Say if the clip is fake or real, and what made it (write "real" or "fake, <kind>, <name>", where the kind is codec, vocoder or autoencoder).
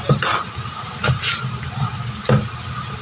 real